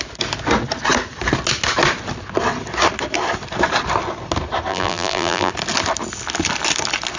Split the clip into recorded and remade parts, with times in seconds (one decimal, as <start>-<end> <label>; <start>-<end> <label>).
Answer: 0.0-4.7 recorded; 4.7-5.5 remade; 5.5-7.2 recorded